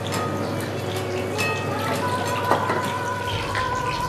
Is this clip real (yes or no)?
yes